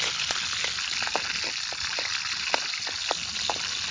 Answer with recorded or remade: recorded